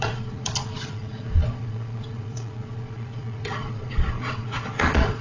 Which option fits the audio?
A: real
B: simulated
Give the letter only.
B